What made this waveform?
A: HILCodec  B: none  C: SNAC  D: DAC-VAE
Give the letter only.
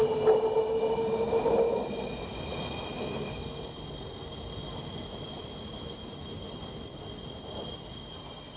B